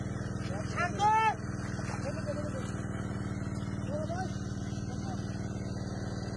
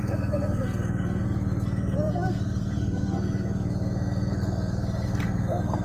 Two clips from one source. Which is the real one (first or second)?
first